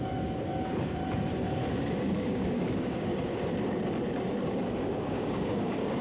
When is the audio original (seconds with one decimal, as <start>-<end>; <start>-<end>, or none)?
1.0-1.7; 3.1-4.4